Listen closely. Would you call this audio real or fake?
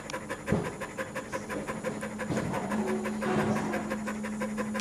real